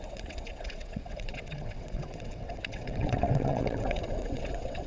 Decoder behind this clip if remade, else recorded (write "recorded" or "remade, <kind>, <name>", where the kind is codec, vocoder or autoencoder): remade, vocoder, WaveNeXt